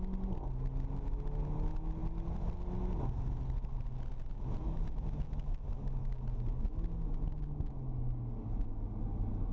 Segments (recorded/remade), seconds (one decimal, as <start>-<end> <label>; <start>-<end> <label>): 0.0-9.5 recorded